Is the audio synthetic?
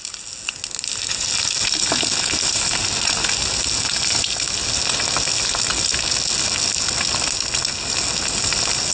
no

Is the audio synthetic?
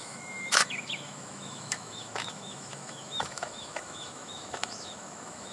yes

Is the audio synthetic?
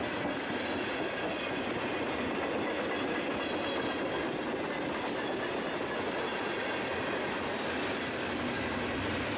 no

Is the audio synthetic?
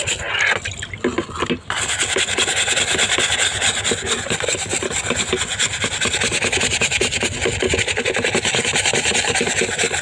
no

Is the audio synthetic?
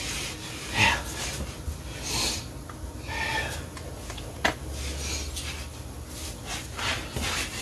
no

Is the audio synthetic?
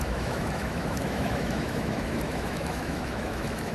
yes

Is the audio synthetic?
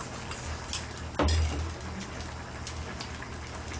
no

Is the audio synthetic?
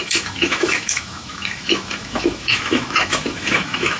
yes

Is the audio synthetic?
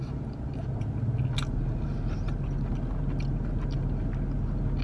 no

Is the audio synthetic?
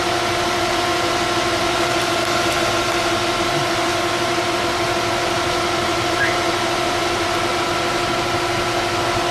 no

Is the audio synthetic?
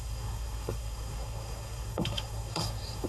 yes